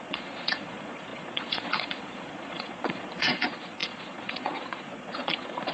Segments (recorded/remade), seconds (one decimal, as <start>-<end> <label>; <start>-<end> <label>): 0.0-5.7 remade